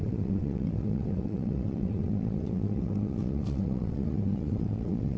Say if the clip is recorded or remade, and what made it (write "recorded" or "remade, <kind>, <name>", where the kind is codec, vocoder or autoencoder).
remade, vocoder, WaveNeXt